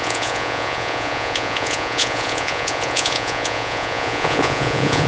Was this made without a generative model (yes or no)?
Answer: no